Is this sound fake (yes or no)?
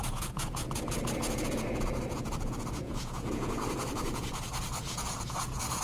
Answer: yes